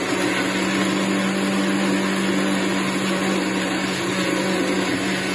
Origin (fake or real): real